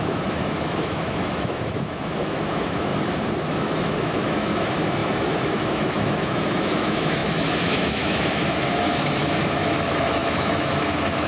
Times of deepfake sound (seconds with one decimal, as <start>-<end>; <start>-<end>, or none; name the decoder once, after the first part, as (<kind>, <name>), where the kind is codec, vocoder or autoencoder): 0.0-2.9 (autoencoder, DAC-VAE); 3.5-11.3